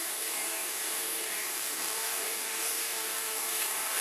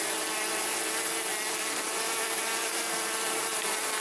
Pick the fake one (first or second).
first